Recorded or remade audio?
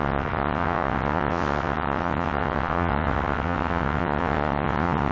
remade